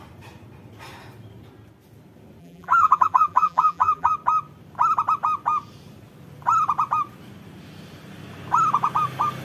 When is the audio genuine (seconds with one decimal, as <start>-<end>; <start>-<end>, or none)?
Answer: 0.0-2.4; 4.1-9.4